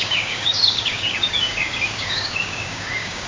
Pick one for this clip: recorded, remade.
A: remade